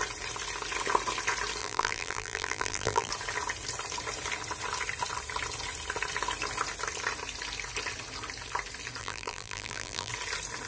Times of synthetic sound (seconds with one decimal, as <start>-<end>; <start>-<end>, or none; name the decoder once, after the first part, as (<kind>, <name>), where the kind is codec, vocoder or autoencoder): 1.6-3.1 (vocoder, BigVGAN v2); 9.0-10.1